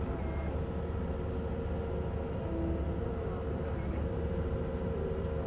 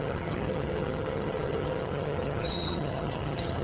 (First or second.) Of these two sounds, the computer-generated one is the second